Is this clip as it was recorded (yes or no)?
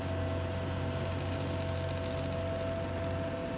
yes